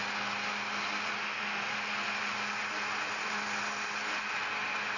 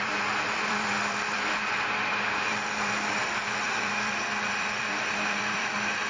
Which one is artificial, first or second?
second